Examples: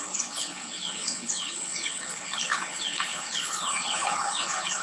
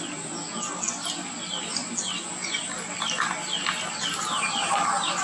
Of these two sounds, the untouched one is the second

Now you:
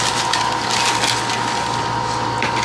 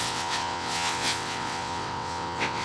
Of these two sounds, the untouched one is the first